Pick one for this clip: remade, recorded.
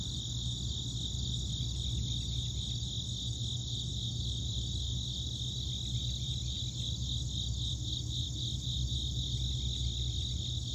recorded